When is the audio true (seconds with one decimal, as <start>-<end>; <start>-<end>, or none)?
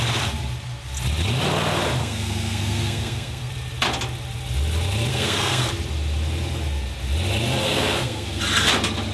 0.0-2.0; 3.5-5.1; 5.7-7.6; 8.4-9.1